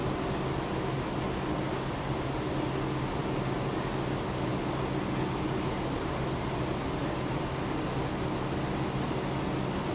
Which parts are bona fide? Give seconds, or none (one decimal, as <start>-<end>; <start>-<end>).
0.0-7.0; 7.5-9.9